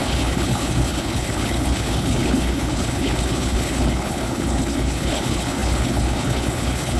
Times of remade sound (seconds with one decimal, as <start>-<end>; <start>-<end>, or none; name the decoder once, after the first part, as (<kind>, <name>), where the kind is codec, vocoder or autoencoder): 0.0-7.0 (codec, HILCodec)